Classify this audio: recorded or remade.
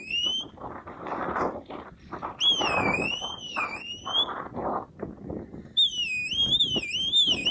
recorded